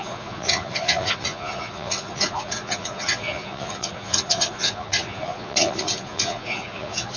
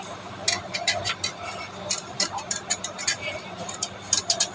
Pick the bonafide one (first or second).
second